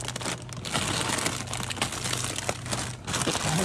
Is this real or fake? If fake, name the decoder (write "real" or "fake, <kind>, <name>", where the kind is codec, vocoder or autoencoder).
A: real